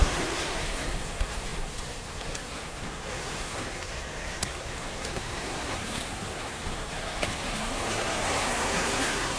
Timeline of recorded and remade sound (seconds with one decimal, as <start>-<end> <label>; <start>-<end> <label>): 0.0-9.4 remade